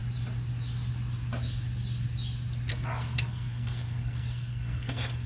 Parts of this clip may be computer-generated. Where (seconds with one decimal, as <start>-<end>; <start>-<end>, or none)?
2.7-5.3